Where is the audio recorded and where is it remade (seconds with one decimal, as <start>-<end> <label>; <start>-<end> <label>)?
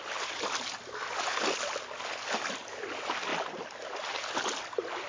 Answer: 0.0-5.1 recorded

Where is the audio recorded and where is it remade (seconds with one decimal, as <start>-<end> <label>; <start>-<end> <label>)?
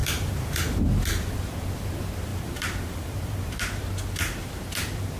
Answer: 0.0-0.7 remade; 0.7-2.3 recorded; 2.3-3.5 remade; 3.5-5.2 recorded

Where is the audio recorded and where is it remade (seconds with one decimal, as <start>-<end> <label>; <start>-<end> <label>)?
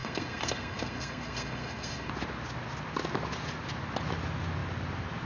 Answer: 0.0-2.1 remade; 2.1-5.3 recorded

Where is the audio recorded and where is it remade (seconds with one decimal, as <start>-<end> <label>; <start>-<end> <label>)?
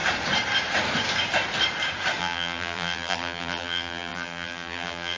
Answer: 0.0-2.2 recorded; 2.2-5.2 remade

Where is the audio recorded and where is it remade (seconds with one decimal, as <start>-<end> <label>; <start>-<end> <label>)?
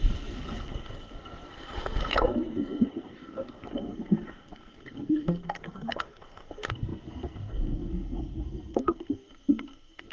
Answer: 0.0-10.1 remade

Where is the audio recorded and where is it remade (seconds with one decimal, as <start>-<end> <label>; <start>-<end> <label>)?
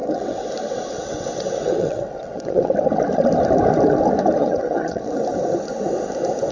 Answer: 0.0-0.5 remade; 0.5-1.1 recorded; 1.1-2.7 remade; 2.7-4.4 recorded; 4.4-5.1 remade; 5.1-6.5 recorded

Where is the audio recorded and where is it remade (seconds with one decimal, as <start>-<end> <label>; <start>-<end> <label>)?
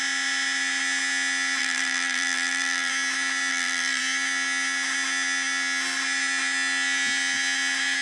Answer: 0.0-1.6 recorded; 1.6-2.9 remade; 2.9-3.5 recorded; 3.5-4.0 remade; 4.0-8.0 recorded